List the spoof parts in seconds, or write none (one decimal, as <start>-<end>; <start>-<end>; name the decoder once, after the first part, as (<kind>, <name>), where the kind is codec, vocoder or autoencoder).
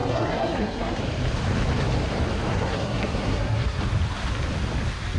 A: 0.0-1.0 (codec, SNAC); 2.5-3.8